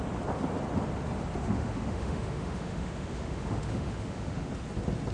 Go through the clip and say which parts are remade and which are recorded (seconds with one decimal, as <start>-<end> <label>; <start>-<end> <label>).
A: 0.0-1.4 recorded; 1.4-4.5 remade; 4.5-5.1 recorded